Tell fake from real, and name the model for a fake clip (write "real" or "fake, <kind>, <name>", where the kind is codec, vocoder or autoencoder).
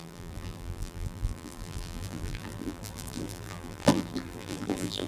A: fake, vocoder, BigVGAN v2